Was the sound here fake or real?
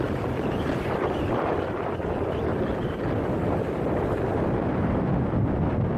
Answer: real